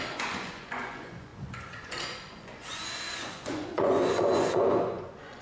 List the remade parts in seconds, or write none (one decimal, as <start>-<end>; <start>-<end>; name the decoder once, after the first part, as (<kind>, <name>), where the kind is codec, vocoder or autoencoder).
0.0-5.4 (vocoder, Vocos)